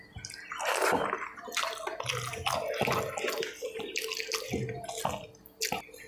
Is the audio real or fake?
real